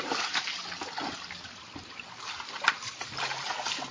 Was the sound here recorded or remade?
recorded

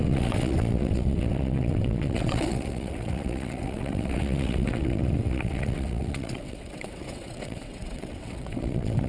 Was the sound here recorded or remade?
remade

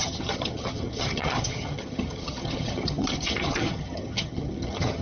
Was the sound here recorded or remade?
remade